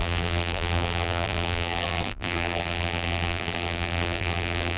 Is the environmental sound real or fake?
fake